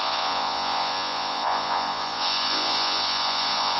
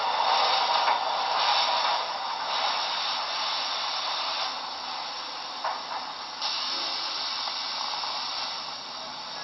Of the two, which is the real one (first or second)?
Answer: second